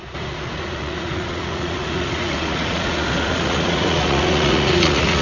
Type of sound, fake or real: fake